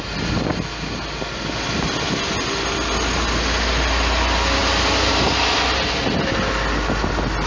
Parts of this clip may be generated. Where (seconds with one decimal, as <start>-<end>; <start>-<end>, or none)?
none